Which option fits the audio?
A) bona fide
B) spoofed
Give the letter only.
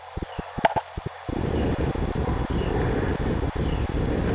A